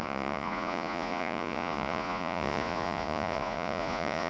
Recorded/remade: remade